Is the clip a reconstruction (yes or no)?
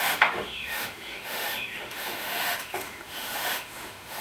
yes